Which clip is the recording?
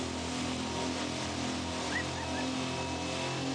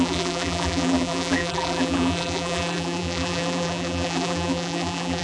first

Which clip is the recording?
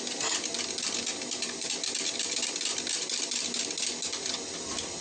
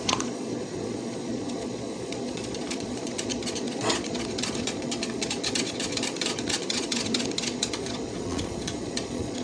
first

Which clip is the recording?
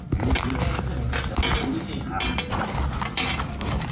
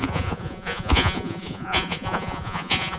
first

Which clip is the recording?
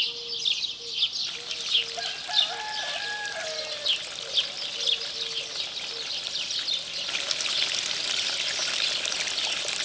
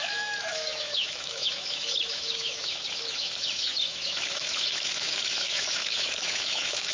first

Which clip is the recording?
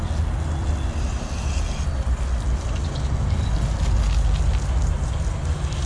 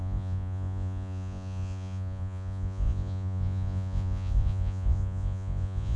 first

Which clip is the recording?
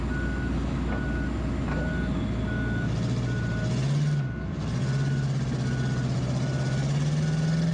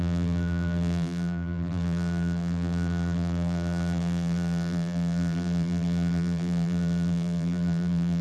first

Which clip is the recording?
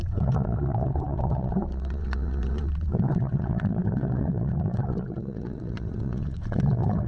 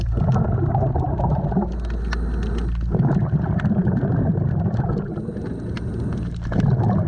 second